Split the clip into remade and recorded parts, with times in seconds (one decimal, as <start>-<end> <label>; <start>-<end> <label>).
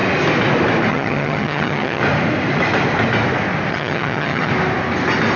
0.0-0.9 recorded; 0.9-2.0 remade; 2.0-3.7 recorded; 3.7-4.5 remade; 4.5-5.4 recorded